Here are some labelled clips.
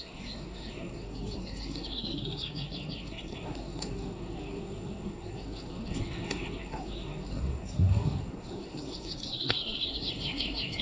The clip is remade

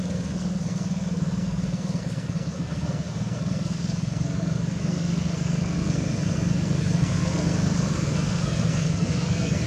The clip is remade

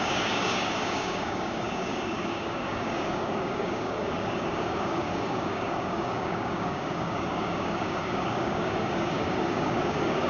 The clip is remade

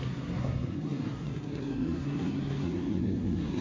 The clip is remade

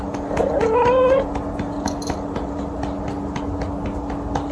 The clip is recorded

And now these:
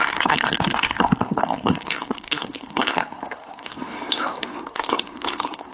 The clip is remade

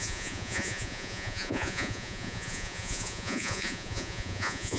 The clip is remade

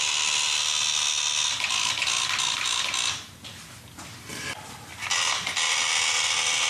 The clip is recorded